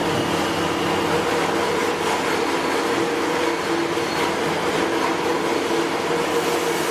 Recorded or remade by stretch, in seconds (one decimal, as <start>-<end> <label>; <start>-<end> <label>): 0.0-6.9 recorded